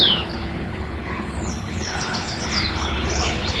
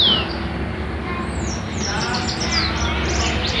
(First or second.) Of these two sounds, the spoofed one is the first